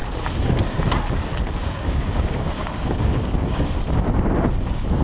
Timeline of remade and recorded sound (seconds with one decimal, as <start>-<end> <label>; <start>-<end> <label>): 0.0-1.6 recorded; 1.6-3.7 remade; 3.7-5.0 recorded